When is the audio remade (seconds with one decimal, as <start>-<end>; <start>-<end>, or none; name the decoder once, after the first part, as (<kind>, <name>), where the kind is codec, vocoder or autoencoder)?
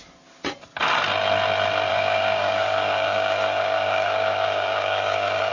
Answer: 1.9-5.5 (codec, DAC)